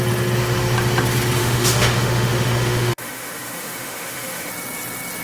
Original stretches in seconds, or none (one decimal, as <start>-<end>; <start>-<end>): 0.0-1.4; 4.5-5.2